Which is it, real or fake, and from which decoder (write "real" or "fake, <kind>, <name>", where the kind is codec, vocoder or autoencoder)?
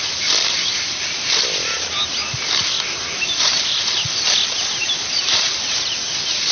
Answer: real